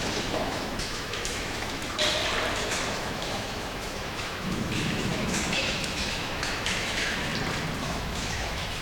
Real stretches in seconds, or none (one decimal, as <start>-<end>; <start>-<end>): 1.8-2.5; 7.3-7.8